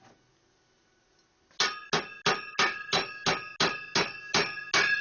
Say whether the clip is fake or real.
real